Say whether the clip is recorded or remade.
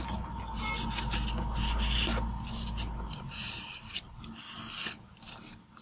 recorded